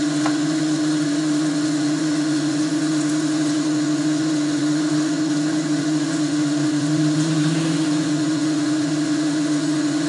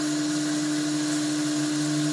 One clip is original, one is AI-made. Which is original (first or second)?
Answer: second